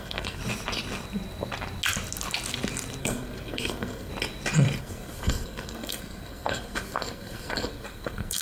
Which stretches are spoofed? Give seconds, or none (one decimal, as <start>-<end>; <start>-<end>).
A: 0.0-0.4; 3.0-4.1; 4.8-8.4